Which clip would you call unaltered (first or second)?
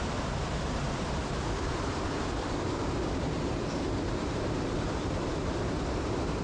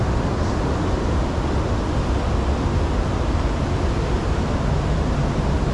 second